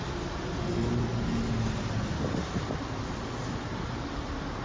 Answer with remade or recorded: recorded